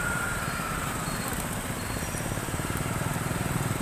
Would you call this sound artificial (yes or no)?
yes